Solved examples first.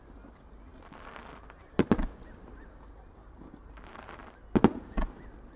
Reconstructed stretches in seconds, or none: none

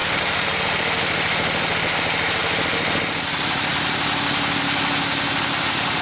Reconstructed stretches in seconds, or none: 0.0-0.6 (vocoder, BigVGAN v2)

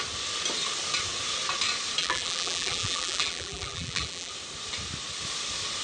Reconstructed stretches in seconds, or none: 2.0-4.3 (vocoder, BigVGAN v2)